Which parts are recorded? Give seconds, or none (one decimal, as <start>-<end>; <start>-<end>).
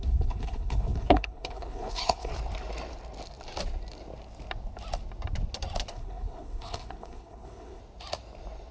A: 2.3-5.9; 7.8-8.7